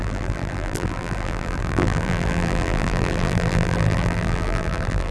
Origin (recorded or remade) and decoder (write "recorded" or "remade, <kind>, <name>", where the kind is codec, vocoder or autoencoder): remade, vocoder, BigVGAN v2